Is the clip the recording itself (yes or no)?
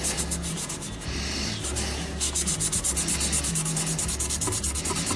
yes